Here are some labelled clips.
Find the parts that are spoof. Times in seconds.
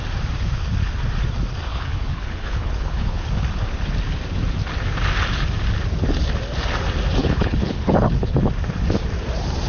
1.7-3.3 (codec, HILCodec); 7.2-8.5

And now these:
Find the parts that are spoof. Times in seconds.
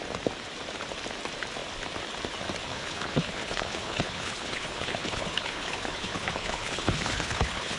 2.7-7.8 (codec, HILCodec)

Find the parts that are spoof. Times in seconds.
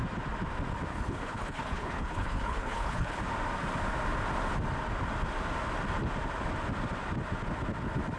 0.9-3.2 (codec, HILCodec)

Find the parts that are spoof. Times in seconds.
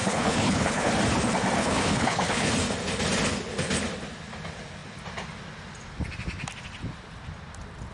0.0-0.9 (codec, HILCodec); 1.6-2.5